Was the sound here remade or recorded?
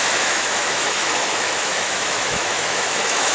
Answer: remade